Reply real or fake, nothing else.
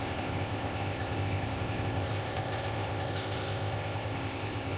fake